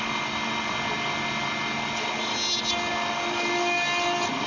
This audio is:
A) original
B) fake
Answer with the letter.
A